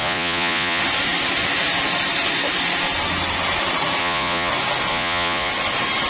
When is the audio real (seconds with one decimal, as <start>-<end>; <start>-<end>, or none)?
0.8-4.0; 4.5-4.9; 5.5-6.1

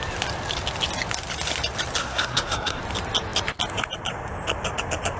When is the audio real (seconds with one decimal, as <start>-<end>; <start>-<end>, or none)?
0.0-2.0; 2.8-5.2

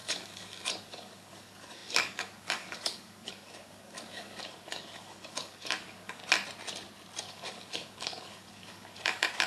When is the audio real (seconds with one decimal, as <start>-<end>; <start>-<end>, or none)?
6.2-7.2

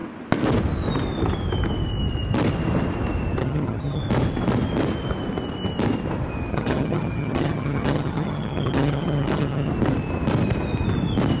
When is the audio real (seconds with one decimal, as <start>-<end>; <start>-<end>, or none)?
0.0-3.4; 4.0-6.5; 9.7-11.4

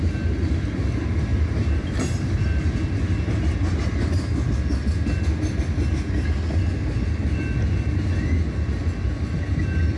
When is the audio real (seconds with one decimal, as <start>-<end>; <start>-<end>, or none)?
0.0-1.3; 3.0-10.0